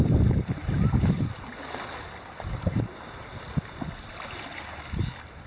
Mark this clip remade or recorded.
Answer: recorded